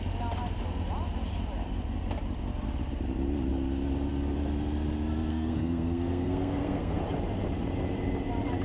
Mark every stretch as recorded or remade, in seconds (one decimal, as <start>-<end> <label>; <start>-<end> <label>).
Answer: 0.0-5.3 recorded; 5.3-7.0 remade; 7.0-8.6 recorded

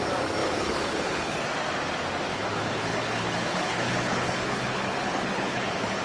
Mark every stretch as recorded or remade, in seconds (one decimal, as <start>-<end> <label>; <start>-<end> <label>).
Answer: 0.0-0.4 recorded; 0.4-1.4 remade; 1.4-2.3 recorded; 2.3-6.0 remade

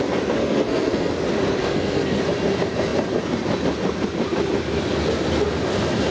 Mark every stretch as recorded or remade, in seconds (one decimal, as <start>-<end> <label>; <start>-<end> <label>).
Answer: 0.0-0.4 recorded; 0.4-1.1 remade; 1.1-1.6 recorded; 1.6-2.2 remade; 2.2-6.1 recorded

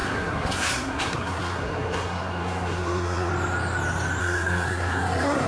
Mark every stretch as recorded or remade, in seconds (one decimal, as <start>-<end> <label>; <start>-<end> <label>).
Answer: 0.0-3.3 remade; 3.3-4.2 recorded; 4.2-5.5 remade

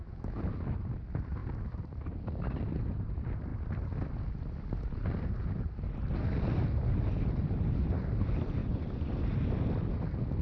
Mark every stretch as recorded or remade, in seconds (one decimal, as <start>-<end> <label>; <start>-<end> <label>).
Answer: 0.0-8.6 recorded; 8.6-9.1 remade; 9.1-10.4 recorded

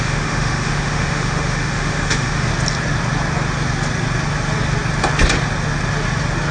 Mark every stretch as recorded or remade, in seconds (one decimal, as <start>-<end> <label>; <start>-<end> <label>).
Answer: 0.0-2.5 remade; 2.5-6.5 recorded

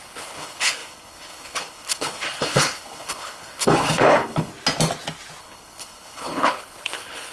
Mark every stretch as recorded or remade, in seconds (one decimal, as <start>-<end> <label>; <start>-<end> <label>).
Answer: 0.0-4.5 remade; 4.5-5.4 recorded; 5.4-7.3 remade